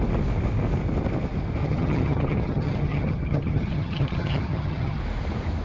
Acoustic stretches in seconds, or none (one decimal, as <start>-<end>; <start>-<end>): 0.0-1.6; 5.0-5.6